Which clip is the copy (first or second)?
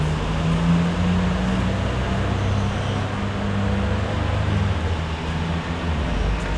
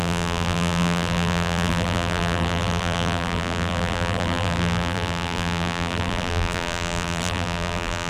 second